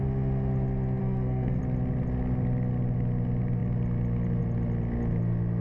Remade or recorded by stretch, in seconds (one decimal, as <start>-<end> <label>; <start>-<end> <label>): 0.0-1.0 recorded; 1.0-1.6 remade; 1.6-5.6 recorded

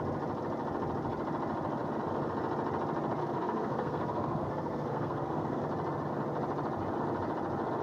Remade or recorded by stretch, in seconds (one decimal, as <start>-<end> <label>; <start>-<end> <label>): 0.0-3.2 recorded; 3.2-5.6 remade; 5.6-7.8 recorded

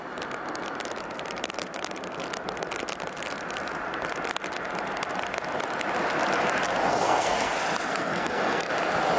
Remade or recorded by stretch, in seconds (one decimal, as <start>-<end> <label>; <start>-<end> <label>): 0.0-6.9 recorded; 6.9-7.5 remade; 7.5-7.9 recorded; 7.9-8.7 remade; 8.7-9.2 recorded

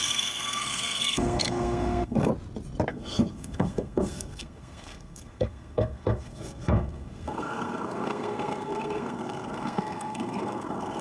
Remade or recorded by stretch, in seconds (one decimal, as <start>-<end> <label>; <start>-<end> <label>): 0.0-2.3 remade; 2.3-2.9 recorded; 2.9-11.0 remade

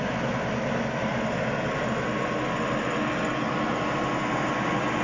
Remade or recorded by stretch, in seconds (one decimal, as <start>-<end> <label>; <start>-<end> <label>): 0.0-5.0 recorded

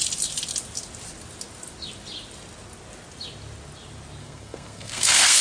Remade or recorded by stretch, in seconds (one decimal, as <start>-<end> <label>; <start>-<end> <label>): 0.0-4.2 recorded; 4.2-5.4 remade

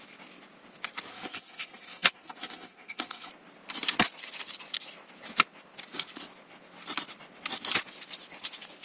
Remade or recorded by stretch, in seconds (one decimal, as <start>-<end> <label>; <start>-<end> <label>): 0.0-1.1 recorded; 1.1-3.3 remade; 3.3-8.8 recorded